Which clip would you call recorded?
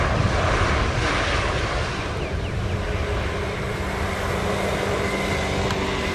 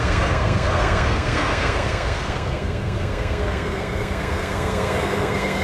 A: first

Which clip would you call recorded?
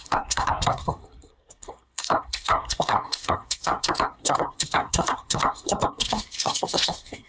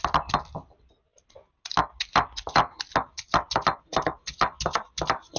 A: second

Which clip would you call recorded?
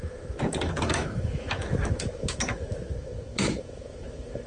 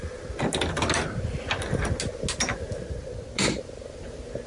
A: second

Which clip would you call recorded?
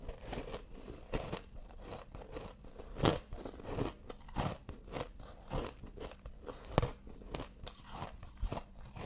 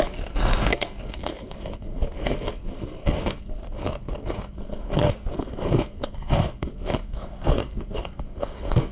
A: first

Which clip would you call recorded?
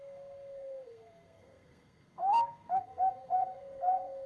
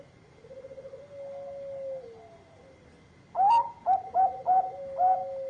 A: second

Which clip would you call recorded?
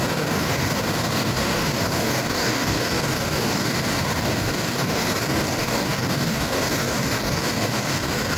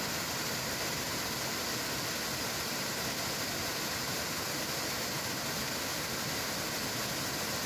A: second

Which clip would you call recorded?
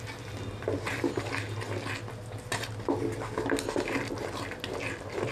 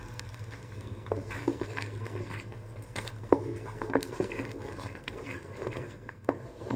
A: first